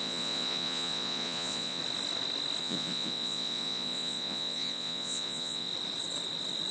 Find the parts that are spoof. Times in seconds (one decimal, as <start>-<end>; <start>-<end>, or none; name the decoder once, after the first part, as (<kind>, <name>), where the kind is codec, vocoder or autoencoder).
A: 0.0-1.8 (vocoder, Vocos); 2.6-5.7